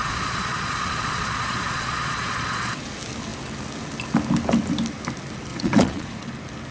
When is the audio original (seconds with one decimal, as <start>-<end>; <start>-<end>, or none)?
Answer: 2.8-5.5; 6.3-6.7